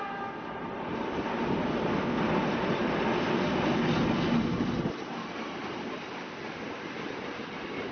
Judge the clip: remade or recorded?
recorded